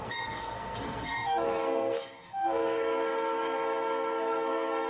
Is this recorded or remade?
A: remade